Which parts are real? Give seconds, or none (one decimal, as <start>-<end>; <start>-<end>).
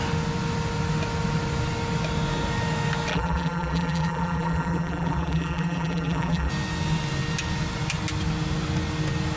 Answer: 0.0-3.1; 6.5-9.4